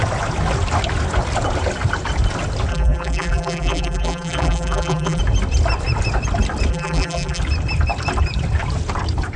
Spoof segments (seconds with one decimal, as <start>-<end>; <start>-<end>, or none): 2.7-5.2; 6.7-7.4